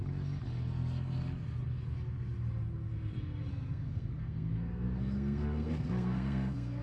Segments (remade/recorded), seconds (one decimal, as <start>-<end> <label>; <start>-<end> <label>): 0.0-3.5 recorded; 3.5-6.8 remade